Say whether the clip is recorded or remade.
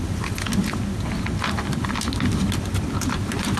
recorded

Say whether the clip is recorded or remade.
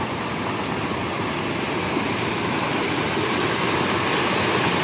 recorded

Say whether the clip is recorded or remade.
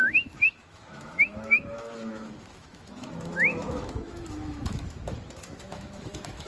remade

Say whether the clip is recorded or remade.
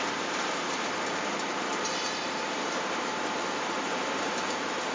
remade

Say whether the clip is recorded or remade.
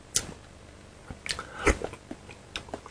recorded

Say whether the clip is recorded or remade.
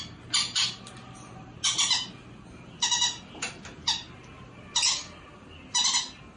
recorded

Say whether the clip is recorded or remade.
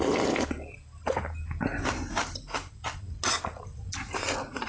recorded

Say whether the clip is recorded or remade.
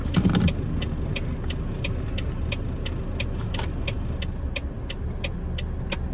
recorded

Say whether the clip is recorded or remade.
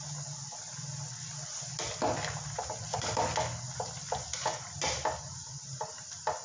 recorded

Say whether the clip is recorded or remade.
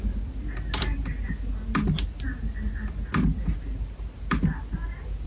recorded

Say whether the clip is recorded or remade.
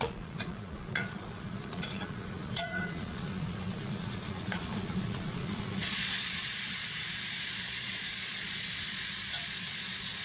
remade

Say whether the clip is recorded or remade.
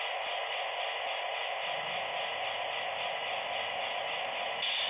recorded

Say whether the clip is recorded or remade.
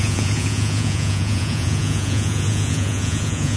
remade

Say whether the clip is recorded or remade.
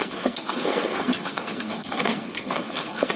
remade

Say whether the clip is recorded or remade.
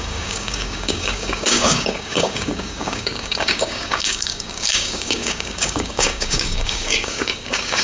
remade